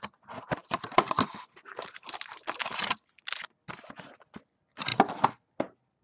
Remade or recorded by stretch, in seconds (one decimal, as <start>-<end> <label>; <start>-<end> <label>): 0.0-6.0 recorded